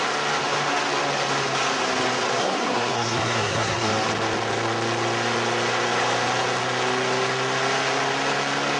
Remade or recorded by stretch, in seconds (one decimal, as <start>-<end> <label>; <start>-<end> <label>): 0.0-2.4 recorded; 2.4-3.9 remade; 3.9-8.8 recorded

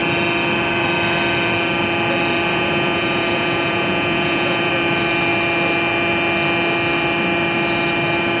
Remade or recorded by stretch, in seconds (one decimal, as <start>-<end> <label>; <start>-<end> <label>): 0.0-2.5 recorded; 2.5-4.7 remade; 4.7-8.4 recorded

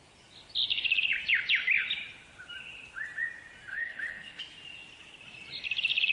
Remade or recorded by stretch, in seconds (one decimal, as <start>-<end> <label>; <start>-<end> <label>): 0.0-3.7 recorded; 3.7-4.4 remade; 4.4-6.1 recorded

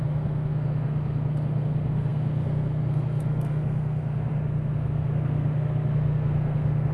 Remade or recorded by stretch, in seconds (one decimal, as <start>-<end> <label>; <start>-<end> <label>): 0.0-6.9 remade

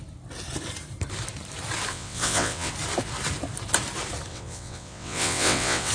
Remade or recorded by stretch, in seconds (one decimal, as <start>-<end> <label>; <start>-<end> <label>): 0.0-1.9 recorded; 1.9-2.7 remade; 2.7-4.3 recorded; 4.3-5.9 remade